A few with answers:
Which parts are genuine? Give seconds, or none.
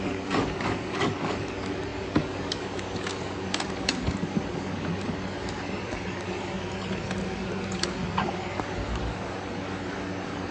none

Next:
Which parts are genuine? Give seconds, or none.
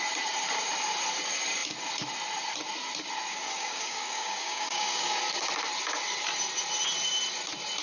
0.0-3.3; 5.2-7.8